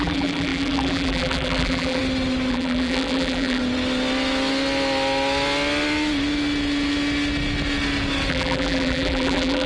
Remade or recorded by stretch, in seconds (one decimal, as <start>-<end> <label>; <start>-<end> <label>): 0.0-2.0 remade; 2.0-2.5 recorded; 2.5-3.6 remade; 3.6-8.3 recorded; 8.3-9.7 remade